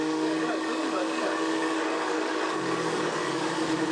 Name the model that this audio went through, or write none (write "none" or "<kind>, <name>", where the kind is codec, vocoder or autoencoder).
codec, DAC